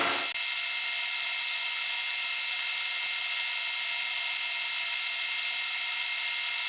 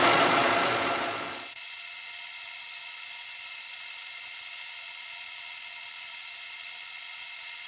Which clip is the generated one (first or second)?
second